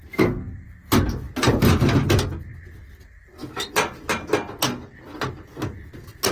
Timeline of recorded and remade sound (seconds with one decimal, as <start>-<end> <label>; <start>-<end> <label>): 0.0-6.3 recorded